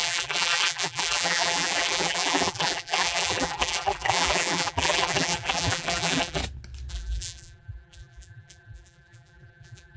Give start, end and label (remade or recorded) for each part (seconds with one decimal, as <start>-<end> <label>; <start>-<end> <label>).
0.0-6.4 remade; 6.4-6.9 recorded; 6.9-10.0 remade